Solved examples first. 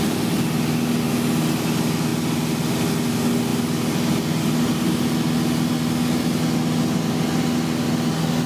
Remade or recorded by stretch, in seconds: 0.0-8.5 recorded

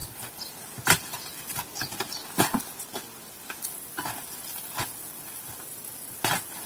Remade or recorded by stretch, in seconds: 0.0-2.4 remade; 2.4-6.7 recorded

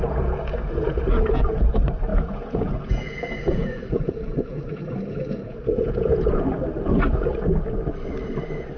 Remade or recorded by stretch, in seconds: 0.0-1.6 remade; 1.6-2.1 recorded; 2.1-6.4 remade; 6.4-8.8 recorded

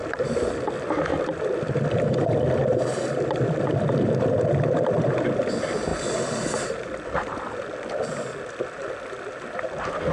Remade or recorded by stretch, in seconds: 0.0-1.1 recorded; 1.1-5.1 remade; 5.1-5.9 recorded; 5.9-7.6 remade; 7.6-10.1 recorded

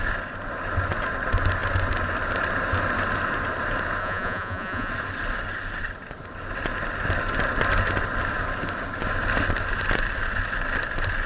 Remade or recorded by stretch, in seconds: 0.0-4.0 recorded; 4.0-4.9 remade; 4.9-11.3 recorded

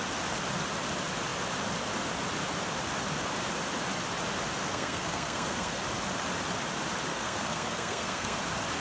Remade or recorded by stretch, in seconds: 0.0-4.6 recorded; 4.6-5.8 remade; 5.8-7.1 recorded; 7.1-8.4 remade; 8.4-8.8 recorded

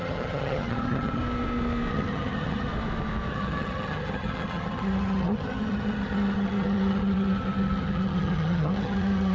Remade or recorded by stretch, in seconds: 0.0-1.2 remade; 1.2-1.9 recorded; 1.9-2.7 remade; 2.7-3.3 recorded; 3.3-9.3 remade

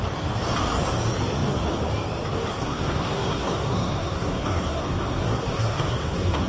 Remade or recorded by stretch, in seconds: 0.0-2.5 recorded; 2.5-6.5 remade